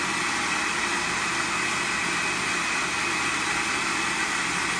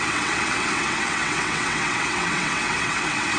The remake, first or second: second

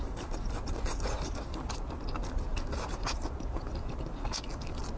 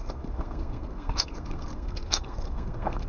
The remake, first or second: second